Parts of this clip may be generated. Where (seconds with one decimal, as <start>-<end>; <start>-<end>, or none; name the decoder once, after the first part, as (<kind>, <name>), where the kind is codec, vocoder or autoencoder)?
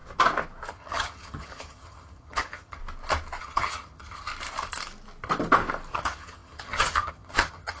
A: 0.7-2.8 (vocoder, HiFi-GAN); 3.4-4.3; 5.9-7.8